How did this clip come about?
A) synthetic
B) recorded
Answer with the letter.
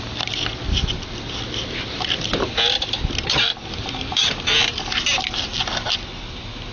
B